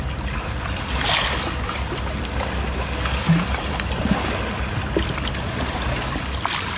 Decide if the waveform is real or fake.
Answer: real